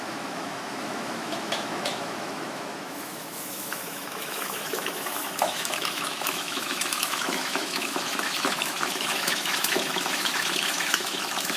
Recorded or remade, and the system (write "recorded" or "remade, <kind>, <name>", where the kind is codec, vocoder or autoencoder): remade, autoencoder, DAC-VAE